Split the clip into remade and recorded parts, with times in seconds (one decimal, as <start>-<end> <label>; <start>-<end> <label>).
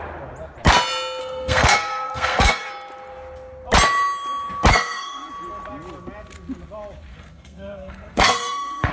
0.0-1.2 recorded; 1.2-2.7 remade; 2.7-4.7 recorded; 4.7-5.3 remade; 5.3-7.1 recorded; 7.1-8.9 remade